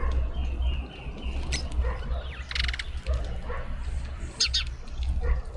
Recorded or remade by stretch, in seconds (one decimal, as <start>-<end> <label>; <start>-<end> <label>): 0.0-5.6 recorded